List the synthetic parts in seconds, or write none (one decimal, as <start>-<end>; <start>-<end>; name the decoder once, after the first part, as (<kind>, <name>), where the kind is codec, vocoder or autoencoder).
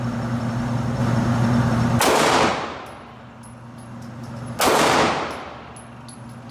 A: none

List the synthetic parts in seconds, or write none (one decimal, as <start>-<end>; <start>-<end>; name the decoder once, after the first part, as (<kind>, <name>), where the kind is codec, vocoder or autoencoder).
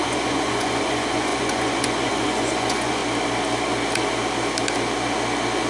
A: 0.0-3.0 (vocoder, Vocos)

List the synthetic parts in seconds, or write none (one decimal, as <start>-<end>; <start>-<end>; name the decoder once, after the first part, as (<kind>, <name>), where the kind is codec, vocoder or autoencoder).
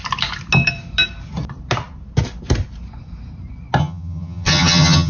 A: 3.8-5.1 (vocoder, HiFi-GAN)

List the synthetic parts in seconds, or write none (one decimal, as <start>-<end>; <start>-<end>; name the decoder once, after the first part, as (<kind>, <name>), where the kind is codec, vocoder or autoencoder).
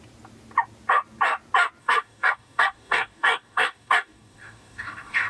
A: 1.8-5.3 (codec, DAC)